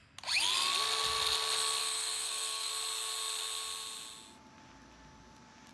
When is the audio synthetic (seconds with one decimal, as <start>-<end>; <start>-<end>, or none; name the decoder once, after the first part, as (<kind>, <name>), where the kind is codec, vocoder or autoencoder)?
1.8-2.7 (codec, SNAC)